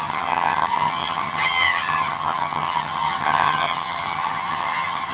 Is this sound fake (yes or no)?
yes